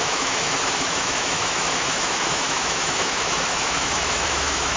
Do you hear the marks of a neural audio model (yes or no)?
yes